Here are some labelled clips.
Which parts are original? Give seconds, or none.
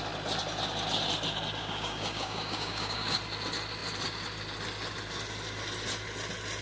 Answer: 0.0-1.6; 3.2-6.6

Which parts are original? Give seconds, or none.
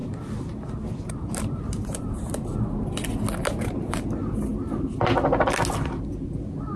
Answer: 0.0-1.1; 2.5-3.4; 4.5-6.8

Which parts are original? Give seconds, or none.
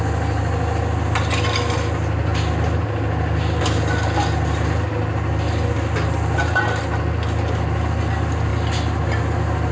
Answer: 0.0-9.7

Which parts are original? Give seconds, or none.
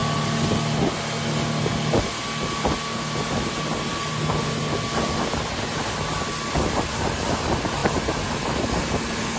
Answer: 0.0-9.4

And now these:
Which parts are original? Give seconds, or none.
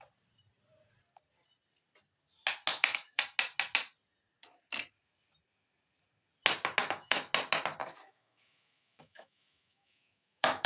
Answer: 0.0-2.7; 3.2-6.8; 7.3-7.8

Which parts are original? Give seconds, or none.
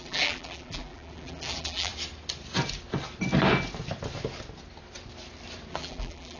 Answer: 1.9-5.7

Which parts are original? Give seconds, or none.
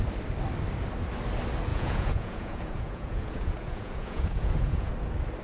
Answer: 0.0-1.7; 4.9-5.4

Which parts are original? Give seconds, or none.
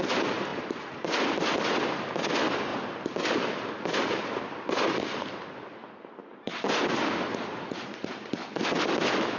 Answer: 0.0-7.3; 8.1-9.4